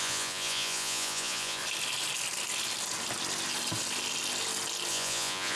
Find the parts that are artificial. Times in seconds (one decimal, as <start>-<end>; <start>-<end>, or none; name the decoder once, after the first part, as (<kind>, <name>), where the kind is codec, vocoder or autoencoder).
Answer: 0.0-1.6 (vocoder, Vocos); 4.9-5.6